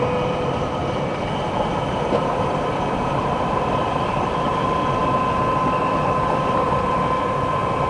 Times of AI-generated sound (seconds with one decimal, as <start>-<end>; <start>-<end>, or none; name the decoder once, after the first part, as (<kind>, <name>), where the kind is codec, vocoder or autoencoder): none